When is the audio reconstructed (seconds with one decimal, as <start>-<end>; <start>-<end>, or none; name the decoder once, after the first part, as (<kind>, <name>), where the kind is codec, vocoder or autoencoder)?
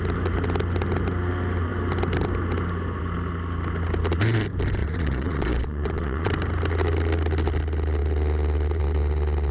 4.8-6.3 (vocoder, Vocos)